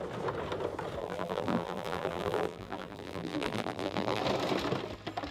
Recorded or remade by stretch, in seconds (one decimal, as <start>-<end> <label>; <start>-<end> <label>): 0.0-1.0 recorded; 1.0-4.2 remade; 4.2-5.3 recorded